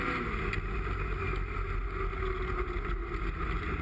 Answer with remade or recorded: recorded